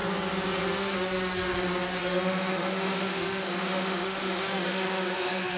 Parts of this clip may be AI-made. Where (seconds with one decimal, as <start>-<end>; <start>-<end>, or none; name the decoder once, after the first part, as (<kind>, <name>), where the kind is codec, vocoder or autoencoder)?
2.0-5.6 (autoencoder, DAC-VAE)